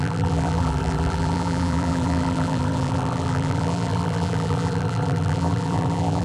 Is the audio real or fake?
fake